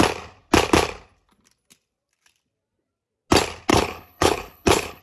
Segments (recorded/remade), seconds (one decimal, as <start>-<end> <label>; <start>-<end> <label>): 0.0-3.7 recorded; 3.7-5.0 remade